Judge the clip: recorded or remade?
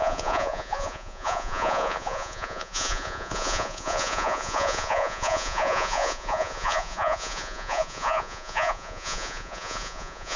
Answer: remade